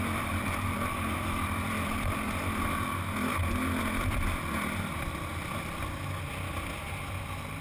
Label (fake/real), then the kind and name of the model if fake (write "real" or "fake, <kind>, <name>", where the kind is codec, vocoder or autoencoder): real